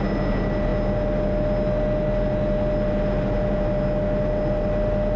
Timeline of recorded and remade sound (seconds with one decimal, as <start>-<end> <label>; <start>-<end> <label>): 0.0-5.2 recorded